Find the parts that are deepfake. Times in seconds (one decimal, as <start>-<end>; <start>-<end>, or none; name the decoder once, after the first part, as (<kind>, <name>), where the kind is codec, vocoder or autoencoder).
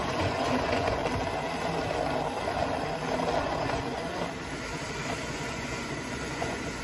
0.0-1.0 (vocoder, Vocos); 3.4-4.1; 5.3-6.8